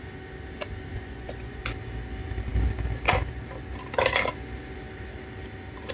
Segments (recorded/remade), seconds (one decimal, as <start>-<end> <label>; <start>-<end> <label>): 0.0-0.9 recorded; 0.9-1.6 remade; 1.6-5.9 recorded